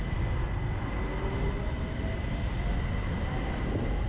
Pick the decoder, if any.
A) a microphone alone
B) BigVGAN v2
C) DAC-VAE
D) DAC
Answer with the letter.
A